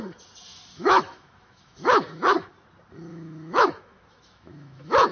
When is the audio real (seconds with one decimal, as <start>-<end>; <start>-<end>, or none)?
0.0-0.5; 2.5-3.1